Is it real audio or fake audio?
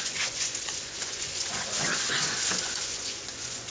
fake